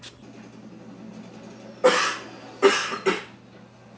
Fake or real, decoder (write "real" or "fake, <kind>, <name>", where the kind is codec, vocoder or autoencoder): real